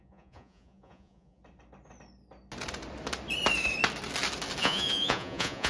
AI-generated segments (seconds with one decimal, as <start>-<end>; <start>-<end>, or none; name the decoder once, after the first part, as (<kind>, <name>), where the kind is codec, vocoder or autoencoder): 0.0-1.4 (vocoder, Vocos); 4.6-5.7